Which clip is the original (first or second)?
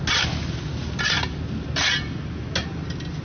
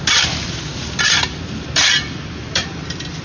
first